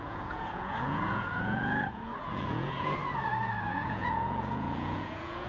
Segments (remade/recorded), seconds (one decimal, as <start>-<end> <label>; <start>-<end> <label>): 0.0-3.0 remade; 3.0-3.7 recorded; 3.7-5.5 remade